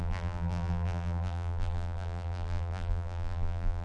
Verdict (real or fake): fake